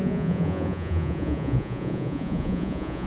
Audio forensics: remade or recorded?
remade